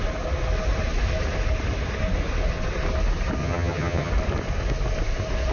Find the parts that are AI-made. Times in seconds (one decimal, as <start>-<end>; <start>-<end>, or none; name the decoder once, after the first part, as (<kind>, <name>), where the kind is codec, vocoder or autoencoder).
3.4-4.1 (vocoder, HiFi-GAN)